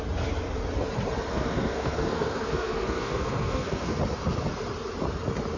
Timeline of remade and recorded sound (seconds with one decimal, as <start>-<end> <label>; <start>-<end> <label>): 0.0-1.3 recorded; 1.3-4.0 remade; 4.0-5.6 recorded